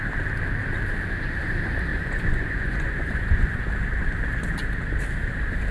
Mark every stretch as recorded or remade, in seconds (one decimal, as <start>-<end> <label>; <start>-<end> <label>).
0.0-1.9 recorded; 1.9-3.6 remade; 3.6-5.7 recorded